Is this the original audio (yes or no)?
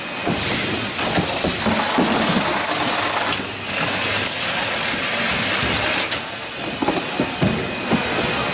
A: yes